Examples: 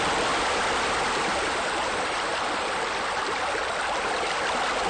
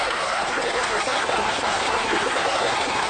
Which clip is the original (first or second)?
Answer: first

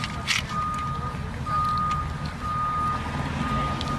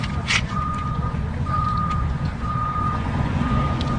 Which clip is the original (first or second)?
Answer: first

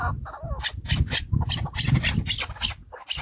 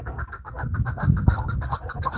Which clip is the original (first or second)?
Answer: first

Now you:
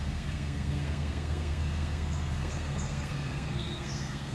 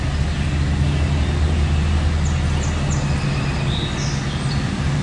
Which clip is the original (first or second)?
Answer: second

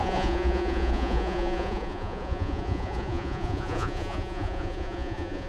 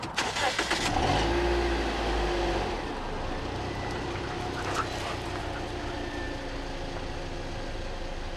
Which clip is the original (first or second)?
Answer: second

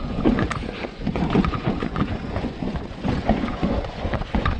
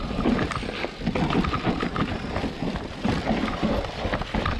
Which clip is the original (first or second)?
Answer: second